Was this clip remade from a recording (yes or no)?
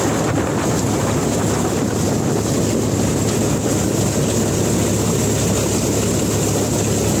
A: no